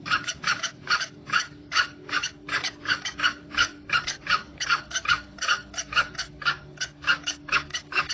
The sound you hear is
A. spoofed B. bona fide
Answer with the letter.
A